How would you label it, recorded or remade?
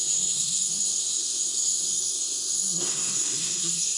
remade